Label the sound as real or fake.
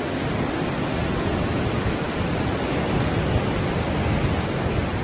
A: real